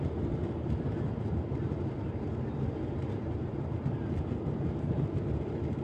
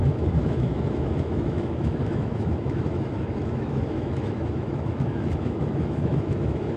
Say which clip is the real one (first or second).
first